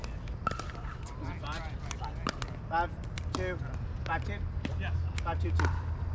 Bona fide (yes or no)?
yes